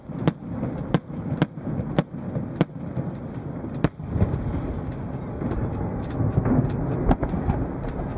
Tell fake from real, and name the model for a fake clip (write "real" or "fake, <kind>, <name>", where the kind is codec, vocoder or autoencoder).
real